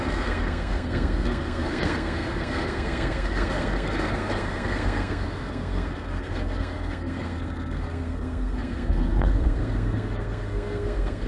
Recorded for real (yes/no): no